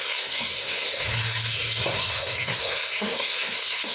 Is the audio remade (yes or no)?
yes